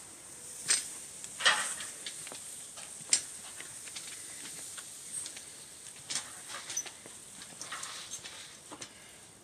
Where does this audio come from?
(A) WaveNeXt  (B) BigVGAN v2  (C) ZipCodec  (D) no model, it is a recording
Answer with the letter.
D